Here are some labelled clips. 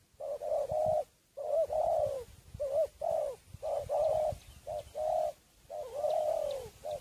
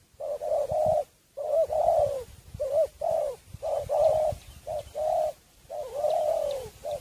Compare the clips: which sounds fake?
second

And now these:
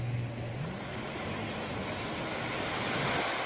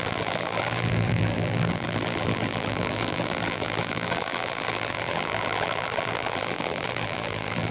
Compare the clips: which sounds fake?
second